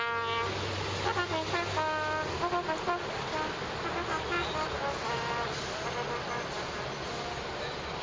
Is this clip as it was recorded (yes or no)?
yes